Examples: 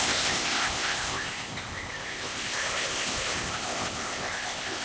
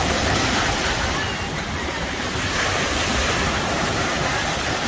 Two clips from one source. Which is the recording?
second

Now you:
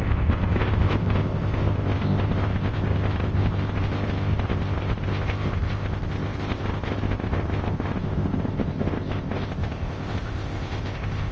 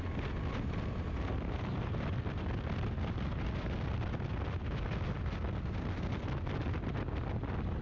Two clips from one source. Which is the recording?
second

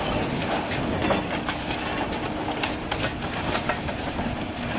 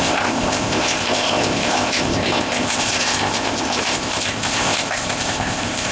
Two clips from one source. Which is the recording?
first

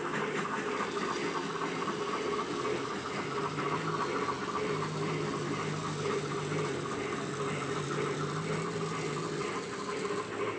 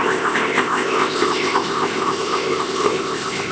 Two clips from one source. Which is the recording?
first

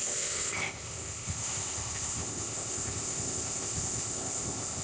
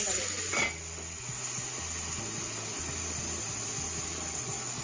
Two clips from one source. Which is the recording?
second